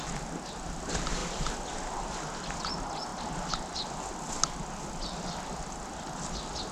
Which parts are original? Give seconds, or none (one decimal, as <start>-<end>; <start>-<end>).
0.0-6.7